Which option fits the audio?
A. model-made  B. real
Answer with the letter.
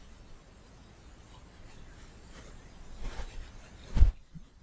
B